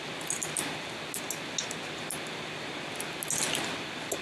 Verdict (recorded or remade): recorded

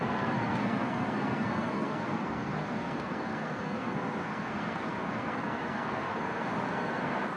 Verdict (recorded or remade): remade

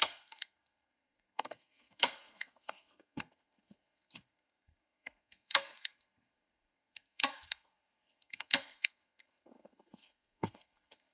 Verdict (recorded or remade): remade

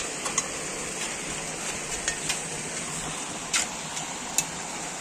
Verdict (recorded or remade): recorded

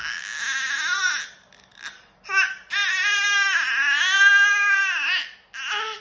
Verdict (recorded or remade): recorded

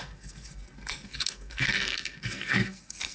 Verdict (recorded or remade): remade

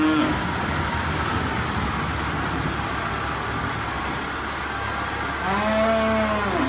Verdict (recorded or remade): recorded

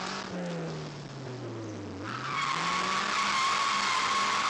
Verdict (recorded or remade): recorded